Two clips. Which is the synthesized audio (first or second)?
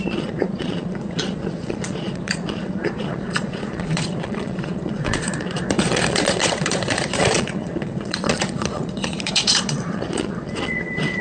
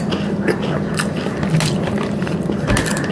first